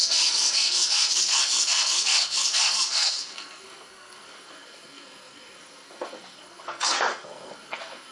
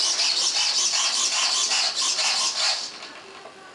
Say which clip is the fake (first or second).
first